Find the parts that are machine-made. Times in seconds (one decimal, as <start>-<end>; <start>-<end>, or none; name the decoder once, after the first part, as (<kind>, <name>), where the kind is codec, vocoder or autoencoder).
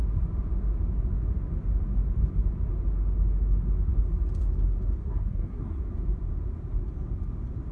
5.0-5.8 (codec, SNAC)